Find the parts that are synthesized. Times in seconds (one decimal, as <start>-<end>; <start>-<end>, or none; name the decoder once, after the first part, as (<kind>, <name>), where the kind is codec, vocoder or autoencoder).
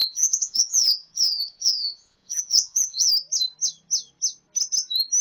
0.0-3.1 (vocoder, Vocos)